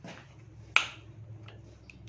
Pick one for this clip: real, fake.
real